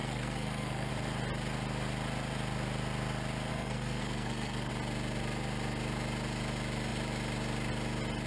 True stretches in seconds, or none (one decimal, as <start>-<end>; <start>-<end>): 0.9-3.5; 4.7-8.3